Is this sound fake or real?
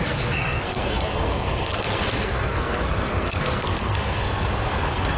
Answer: fake